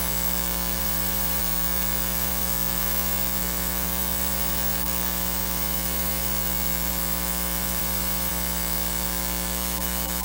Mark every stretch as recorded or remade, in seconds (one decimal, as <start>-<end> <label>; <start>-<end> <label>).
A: 0.0-0.8 remade; 0.8-1.4 recorded; 1.4-7.8 remade; 7.8-8.3 recorded; 8.3-10.2 remade